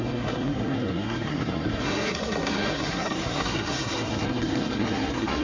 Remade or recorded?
remade